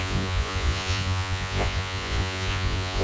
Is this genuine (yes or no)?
no